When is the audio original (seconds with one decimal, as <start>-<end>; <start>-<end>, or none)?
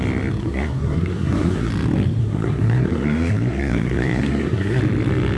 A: 0.0-0.4; 1.7-2.2; 4.8-5.4